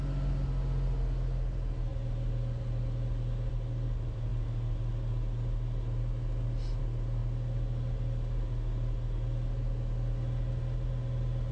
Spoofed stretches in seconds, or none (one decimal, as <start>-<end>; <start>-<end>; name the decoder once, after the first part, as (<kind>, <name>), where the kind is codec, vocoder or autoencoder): none

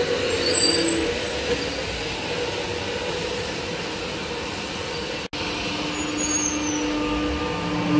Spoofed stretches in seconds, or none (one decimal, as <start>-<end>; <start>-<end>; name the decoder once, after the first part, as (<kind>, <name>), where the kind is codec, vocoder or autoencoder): none